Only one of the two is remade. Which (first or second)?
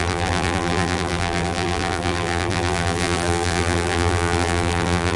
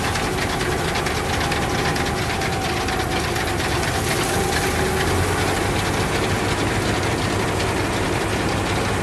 first